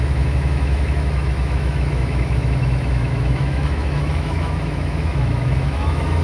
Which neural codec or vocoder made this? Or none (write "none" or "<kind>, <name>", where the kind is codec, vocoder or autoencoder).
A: autoencoder, DAC-VAE